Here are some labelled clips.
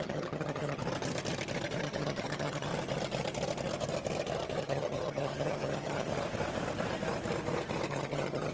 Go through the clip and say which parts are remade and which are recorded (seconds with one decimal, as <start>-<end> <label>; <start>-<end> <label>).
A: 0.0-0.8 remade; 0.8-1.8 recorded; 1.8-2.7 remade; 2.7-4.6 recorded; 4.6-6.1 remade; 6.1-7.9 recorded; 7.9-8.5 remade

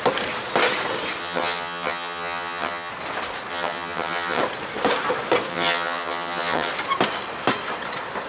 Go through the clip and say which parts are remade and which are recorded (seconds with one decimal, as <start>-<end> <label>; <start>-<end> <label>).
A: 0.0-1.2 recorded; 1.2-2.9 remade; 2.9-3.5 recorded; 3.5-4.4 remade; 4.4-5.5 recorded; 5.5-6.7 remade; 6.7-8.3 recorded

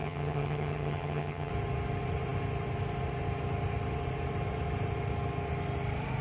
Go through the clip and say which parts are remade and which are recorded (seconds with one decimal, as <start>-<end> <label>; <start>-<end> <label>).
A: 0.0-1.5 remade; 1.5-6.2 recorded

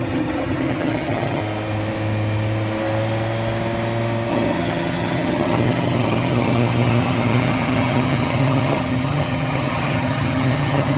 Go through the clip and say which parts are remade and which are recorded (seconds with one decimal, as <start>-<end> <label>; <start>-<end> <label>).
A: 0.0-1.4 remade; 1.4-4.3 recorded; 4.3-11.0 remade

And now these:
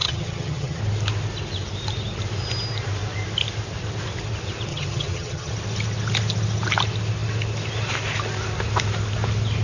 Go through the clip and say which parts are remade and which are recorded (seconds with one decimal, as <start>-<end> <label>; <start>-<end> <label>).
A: 0.0-0.8 remade; 0.8-4.7 recorded; 4.7-5.5 remade; 5.5-9.6 recorded

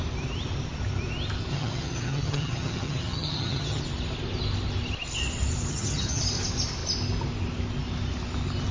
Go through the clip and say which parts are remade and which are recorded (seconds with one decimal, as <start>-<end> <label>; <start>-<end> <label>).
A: 0.0-1.5 recorded; 1.5-3.8 remade; 3.8-5.7 recorded; 5.7-6.2 remade; 6.2-8.7 recorded

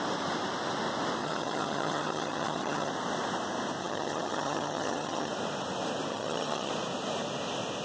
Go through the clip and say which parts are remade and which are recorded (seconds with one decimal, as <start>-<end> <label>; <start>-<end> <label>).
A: 0.0-1.2 recorded; 1.2-2.9 remade; 2.9-3.8 recorded; 3.8-5.3 remade; 5.3-6.1 recorded; 6.1-6.7 remade; 6.7-7.8 recorded